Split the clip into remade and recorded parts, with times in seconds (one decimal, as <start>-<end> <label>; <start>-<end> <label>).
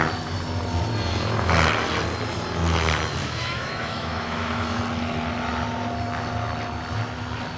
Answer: 0.0-3.2 recorded; 3.2-4.8 remade; 4.8-7.6 recorded